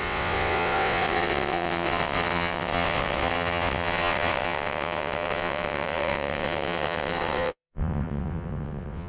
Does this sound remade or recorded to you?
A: remade